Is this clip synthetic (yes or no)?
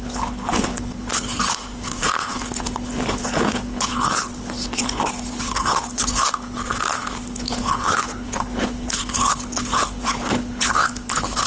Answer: yes